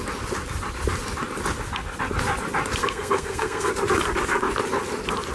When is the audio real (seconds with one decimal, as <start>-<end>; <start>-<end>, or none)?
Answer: 0.0-2.8; 3.7-5.3